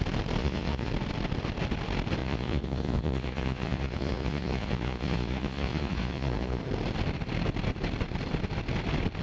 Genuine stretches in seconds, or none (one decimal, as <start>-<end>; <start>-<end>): 0.0-0.4; 0.9-2.2; 6.6-9.2